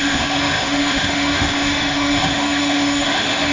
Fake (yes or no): yes